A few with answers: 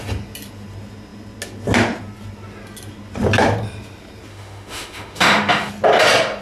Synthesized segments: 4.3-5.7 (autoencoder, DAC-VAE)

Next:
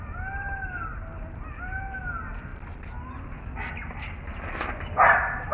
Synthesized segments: none

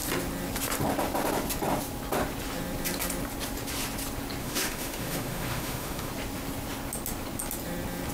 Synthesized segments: 4.4-6.1 (autoencoder, DAC-VAE)

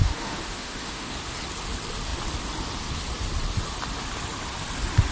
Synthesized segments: 0.0-1.1 (autoencoder, DAC-VAE)